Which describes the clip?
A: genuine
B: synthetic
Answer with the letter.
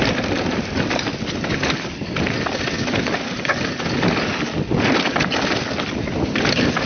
A